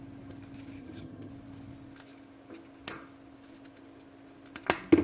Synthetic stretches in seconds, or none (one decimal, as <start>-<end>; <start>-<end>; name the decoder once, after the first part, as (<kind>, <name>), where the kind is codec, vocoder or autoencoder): 0.8-1.3 (vocoder, HiFi-GAN)